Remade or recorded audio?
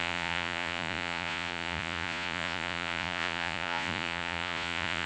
remade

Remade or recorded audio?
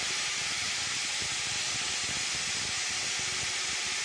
recorded